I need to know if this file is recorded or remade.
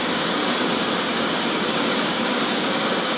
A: remade